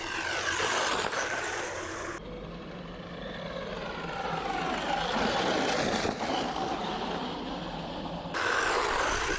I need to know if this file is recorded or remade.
recorded